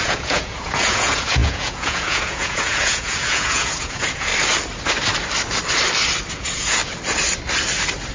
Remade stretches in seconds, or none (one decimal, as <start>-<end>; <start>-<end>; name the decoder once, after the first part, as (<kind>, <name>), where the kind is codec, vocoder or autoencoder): 0.0-4.3 (vocoder, Vocos); 6.3-6.8